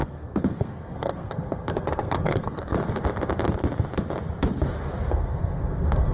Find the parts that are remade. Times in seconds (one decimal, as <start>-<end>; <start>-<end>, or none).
0.0-2.8; 5.1-6.1